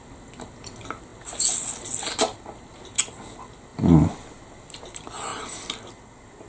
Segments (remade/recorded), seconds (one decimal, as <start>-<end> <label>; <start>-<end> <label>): 0.0-6.5 recorded